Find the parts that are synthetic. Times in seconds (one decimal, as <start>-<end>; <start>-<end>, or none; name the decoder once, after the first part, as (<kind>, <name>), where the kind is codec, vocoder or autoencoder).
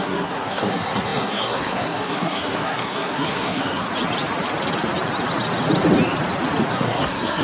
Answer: 0.0-3.9 (codec, SNAC); 6.7-7.4